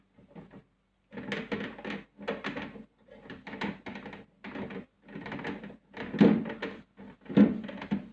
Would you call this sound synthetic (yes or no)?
no